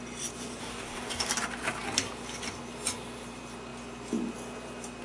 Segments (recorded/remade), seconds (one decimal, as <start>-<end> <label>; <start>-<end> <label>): 0.0-0.6 recorded; 0.6-1.3 remade; 1.3-5.0 recorded